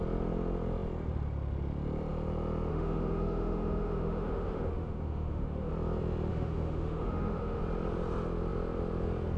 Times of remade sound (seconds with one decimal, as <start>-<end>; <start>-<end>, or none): 2.7-5.7; 6.3-7.6